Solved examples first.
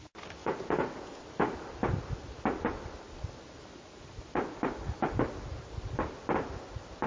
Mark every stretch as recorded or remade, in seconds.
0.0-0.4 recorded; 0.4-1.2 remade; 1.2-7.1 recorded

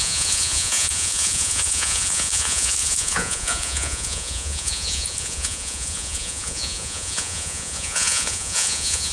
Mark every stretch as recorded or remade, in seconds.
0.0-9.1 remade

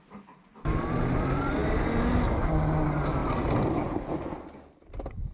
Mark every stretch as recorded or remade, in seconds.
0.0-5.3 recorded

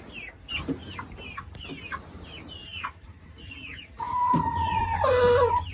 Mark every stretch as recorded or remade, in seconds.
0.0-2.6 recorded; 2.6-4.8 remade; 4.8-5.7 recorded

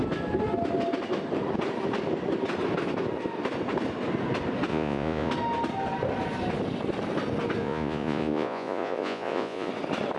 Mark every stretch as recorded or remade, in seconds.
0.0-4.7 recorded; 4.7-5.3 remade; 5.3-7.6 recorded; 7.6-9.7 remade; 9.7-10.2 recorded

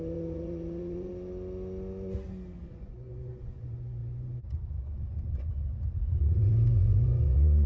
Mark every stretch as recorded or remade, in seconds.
0.0-1.1 remade; 1.1-2.6 recorded; 2.6-7.7 remade